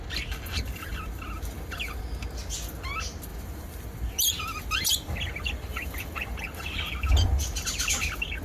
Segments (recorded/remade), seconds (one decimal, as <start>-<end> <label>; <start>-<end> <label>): 0.0-0.9 recorded; 0.9-2.0 remade; 2.0-3.3 recorded; 3.3-7.1 remade; 7.1-8.4 recorded